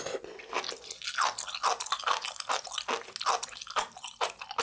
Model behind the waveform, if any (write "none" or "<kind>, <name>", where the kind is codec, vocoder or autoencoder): none